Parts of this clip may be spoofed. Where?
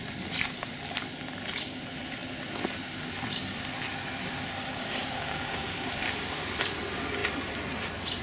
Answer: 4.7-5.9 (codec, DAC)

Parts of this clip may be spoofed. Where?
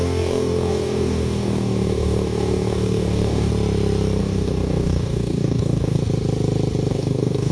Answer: 0.0-3.5 (codec, DAC); 4.2-6.0; 6.9-7.5